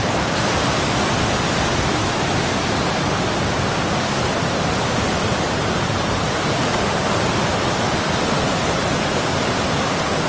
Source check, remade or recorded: recorded